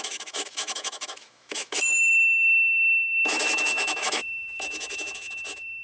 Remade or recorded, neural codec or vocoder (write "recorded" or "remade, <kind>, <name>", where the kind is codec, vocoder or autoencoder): remade, autoencoder, DAC-VAE